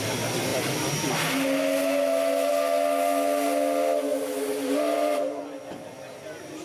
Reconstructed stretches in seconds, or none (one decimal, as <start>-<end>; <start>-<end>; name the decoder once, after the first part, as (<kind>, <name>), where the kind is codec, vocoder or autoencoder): 4.1-5.4 (vocoder, BigVGAN v2)